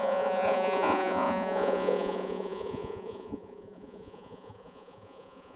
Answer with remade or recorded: remade